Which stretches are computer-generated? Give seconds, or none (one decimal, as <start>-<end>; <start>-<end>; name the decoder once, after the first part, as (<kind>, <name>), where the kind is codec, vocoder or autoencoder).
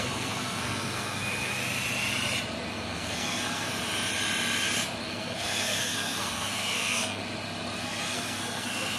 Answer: 0.0-1.5 (codec, SNAC); 2.7-3.7; 5.0-7.2; 7.8-9.0